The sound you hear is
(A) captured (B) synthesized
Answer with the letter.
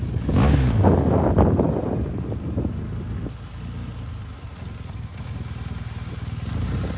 A